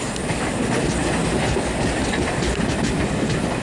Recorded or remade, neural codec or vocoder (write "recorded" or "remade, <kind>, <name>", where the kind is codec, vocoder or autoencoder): recorded